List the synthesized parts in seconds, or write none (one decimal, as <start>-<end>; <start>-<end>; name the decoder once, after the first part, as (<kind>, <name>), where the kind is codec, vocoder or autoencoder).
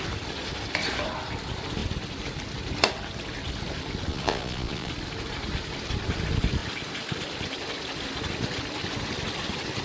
4.1-4.9 (vocoder, Vocos)